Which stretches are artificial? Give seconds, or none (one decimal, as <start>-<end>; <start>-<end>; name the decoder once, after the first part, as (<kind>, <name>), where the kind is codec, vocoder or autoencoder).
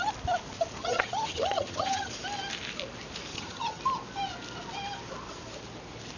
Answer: 0.8-2.1 (vocoder, HiFi-GAN); 3.3-3.8